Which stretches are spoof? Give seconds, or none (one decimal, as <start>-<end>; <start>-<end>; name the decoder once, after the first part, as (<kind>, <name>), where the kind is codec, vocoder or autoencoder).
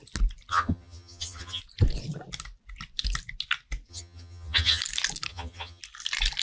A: 0.5-1.6 (vocoder, HiFi-GAN); 3.9-4.8; 5.3-5.8